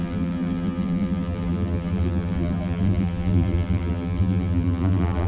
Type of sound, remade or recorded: remade